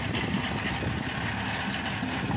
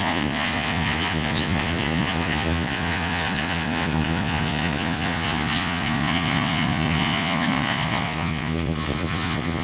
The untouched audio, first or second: first